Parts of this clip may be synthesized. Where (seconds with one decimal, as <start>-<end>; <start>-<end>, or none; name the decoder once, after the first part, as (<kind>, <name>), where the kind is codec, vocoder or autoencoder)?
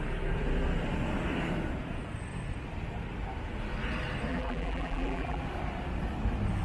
4.3-5.4 (vocoder, BigVGAN v2)